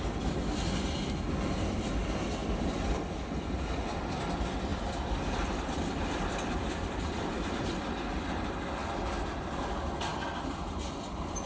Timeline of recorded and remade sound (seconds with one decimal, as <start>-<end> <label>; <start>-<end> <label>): 0.0-2.4 recorded; 2.4-3.5 remade; 3.5-4.7 recorded; 4.7-7.9 remade; 7.9-11.5 recorded